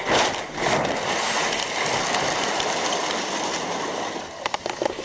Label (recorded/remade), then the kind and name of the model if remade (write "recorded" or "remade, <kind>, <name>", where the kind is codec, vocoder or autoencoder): recorded